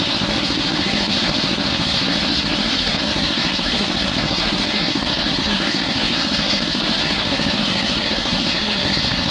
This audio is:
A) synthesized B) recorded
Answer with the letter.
A